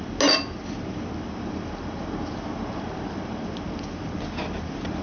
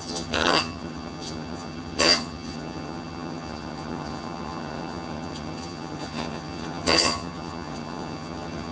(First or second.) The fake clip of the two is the second